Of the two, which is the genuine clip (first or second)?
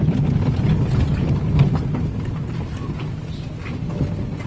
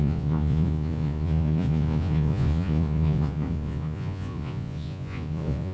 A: first